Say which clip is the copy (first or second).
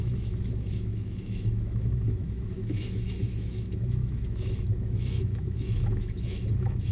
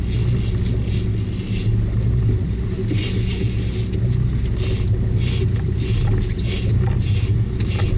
first